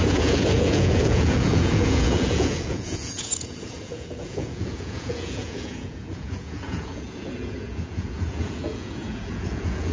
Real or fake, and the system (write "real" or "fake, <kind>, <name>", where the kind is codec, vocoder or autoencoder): fake, vocoder, Vocos